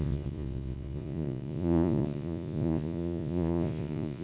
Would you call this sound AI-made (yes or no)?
yes